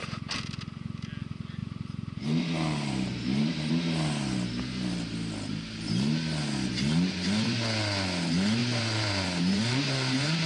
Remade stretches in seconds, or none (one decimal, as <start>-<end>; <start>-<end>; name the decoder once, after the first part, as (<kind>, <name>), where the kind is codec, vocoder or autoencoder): 1.6-3.7 (vocoder, BigVGAN v2); 8.6-10.5